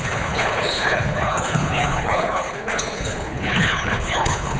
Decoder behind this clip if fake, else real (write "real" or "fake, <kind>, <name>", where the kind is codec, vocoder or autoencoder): fake, codec, HILCodec